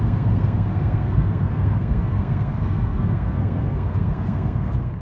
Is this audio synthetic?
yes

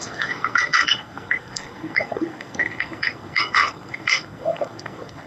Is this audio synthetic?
yes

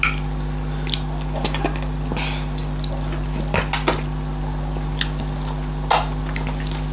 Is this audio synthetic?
no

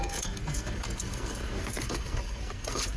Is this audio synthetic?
yes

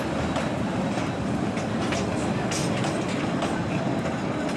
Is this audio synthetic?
no